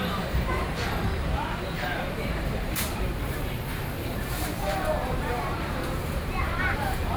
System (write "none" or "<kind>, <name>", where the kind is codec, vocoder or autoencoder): vocoder, BigVGAN v2